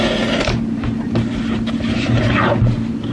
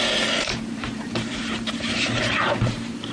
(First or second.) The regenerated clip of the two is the second